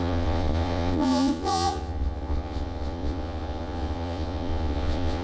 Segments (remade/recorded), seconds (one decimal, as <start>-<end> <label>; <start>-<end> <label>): 0.0-5.2 remade